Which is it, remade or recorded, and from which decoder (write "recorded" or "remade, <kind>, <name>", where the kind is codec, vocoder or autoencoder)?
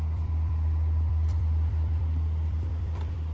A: remade, vocoder, BigVGAN v2